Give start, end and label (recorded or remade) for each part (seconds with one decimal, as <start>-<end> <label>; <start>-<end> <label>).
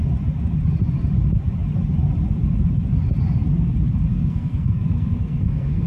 0.0-4.1 recorded; 4.1-5.9 remade